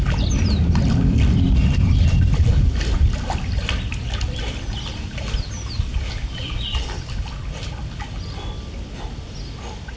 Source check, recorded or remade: recorded